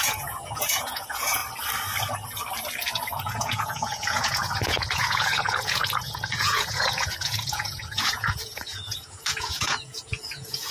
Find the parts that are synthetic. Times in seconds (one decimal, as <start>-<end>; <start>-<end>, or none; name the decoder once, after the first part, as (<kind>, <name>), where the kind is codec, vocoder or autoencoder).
0.0-1.4 (vocoder, Vocos); 3.2-10.7